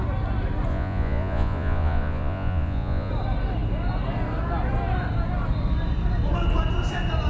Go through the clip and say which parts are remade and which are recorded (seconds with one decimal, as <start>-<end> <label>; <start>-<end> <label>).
0.0-0.7 recorded; 0.7-3.1 remade; 3.1-7.3 recorded